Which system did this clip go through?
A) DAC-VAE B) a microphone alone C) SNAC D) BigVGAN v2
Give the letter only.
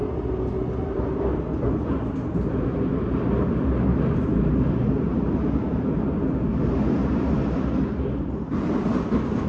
B